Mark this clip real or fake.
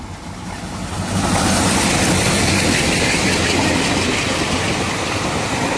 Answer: real